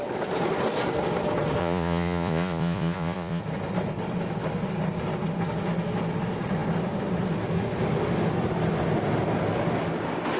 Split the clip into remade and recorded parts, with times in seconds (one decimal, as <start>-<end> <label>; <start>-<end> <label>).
0.0-1.6 recorded; 1.6-3.4 remade; 3.4-10.4 recorded